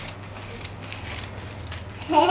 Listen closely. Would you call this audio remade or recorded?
recorded